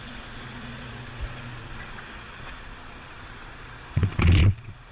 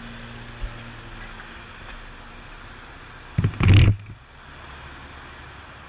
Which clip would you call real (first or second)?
second